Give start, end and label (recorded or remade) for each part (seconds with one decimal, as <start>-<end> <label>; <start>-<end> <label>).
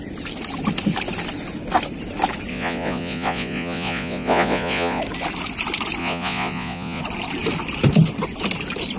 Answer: 0.0-2.5 recorded; 2.5-5.0 remade; 5.0-6.0 recorded; 6.0-7.0 remade; 7.0-9.0 recorded